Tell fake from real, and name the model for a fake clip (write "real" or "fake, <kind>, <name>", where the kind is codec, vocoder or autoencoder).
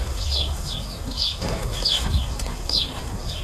fake, codec, SNAC